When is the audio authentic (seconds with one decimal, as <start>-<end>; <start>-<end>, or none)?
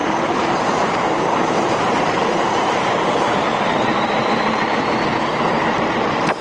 4.9-5.6